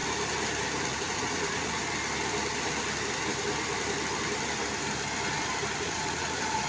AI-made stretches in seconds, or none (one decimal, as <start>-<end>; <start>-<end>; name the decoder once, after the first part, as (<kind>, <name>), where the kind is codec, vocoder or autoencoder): 0.8-1.8 (vocoder, Vocos); 5.8-6.7